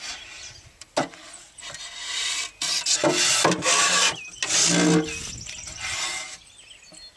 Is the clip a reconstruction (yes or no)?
no